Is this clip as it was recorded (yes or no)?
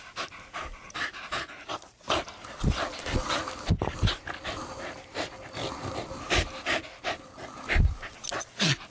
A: yes